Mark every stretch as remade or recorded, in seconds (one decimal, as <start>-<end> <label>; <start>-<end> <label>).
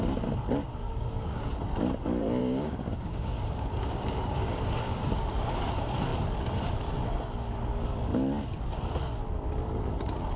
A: 0.0-0.9 recorded; 0.9-1.5 remade; 1.5-2.4 recorded; 2.4-5.2 remade; 5.2-10.4 recorded